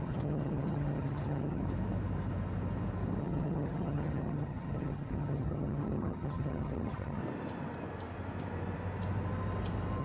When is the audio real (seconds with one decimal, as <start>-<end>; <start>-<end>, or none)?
1.6-3.2; 7.2-10.0